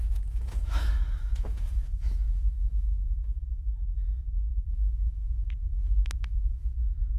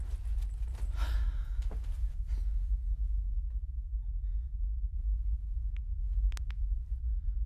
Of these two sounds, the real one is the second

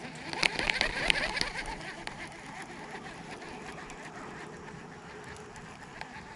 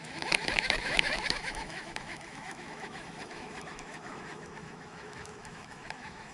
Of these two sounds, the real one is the first